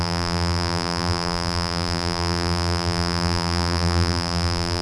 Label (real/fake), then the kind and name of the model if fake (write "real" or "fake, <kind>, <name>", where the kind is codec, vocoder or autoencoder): fake, vocoder, BigVGAN v2